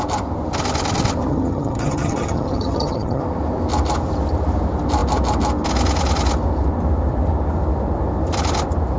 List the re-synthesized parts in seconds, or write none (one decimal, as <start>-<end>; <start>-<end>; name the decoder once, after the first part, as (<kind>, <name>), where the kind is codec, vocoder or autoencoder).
1.3-3.2 (vocoder, HiFi-GAN)